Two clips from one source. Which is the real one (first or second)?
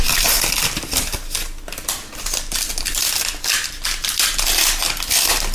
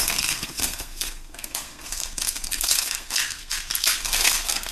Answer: first